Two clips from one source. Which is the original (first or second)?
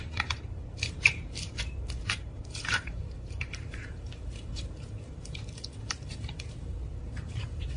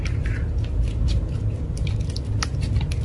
second